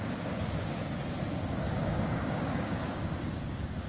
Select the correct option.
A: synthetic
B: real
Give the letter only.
A